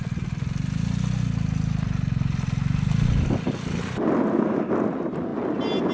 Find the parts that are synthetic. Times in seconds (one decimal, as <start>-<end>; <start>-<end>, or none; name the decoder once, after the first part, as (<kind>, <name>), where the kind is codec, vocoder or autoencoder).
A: none